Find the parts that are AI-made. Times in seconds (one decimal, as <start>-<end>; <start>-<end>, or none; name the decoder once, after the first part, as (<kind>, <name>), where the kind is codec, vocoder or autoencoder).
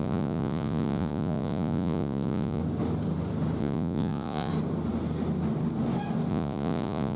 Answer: 0.0-2.6 (vocoder, Vocos); 3.6-4.5; 6.3-7.2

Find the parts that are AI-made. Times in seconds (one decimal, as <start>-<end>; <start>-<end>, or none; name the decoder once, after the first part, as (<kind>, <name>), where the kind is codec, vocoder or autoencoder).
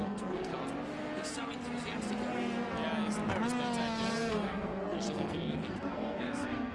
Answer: 0.0-0.5 (codec, SNAC); 4.3-6.7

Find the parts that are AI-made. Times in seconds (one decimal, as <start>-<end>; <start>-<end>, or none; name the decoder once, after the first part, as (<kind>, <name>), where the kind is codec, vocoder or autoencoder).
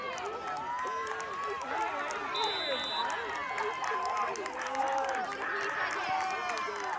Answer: none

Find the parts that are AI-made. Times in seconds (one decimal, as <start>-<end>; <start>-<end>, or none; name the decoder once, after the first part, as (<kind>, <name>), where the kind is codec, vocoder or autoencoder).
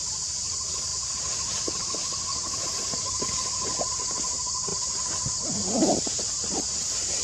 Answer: none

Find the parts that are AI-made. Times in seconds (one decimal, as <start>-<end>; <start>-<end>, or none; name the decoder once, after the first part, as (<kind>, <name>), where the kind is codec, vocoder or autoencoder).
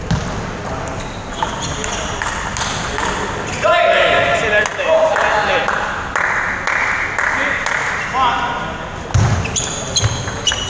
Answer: none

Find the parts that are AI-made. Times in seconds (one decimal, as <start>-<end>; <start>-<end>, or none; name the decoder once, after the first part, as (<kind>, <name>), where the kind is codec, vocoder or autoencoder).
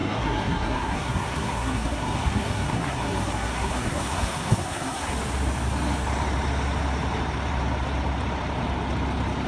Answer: 0.0-5.1 (codec, SNAC)